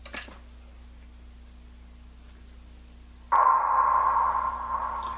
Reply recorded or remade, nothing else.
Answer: recorded